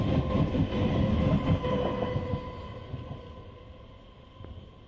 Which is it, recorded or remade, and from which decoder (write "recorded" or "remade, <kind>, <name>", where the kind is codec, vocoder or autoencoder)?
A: recorded